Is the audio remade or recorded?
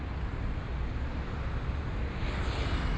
recorded